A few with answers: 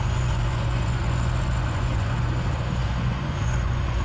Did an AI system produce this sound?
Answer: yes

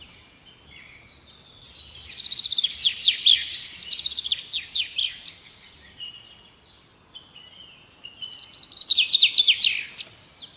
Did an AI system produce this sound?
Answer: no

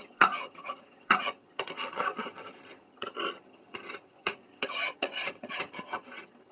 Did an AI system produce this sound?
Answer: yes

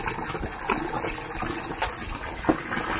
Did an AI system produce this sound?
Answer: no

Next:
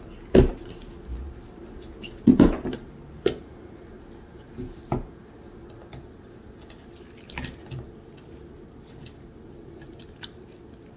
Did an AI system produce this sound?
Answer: no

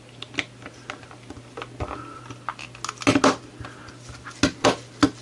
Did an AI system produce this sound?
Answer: no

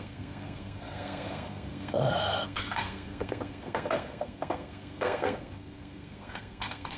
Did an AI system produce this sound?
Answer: yes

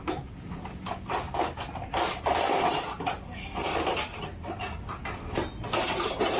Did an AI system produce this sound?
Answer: no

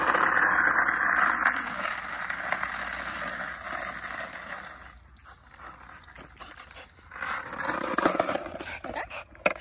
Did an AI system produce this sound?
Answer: no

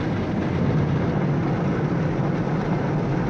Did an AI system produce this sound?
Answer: no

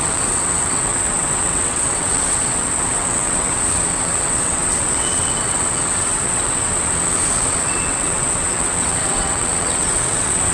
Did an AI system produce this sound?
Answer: yes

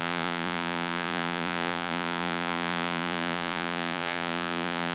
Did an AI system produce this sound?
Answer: yes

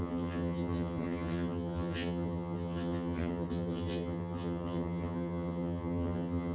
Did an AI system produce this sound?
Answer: yes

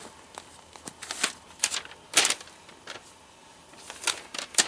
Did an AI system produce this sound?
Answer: no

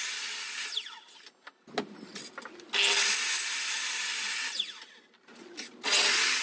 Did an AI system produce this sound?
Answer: no